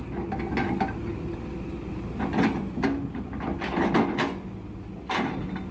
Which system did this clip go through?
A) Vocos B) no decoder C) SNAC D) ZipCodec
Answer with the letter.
B